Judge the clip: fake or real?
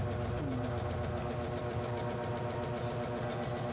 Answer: real